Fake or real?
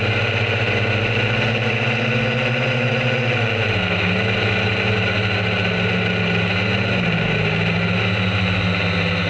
real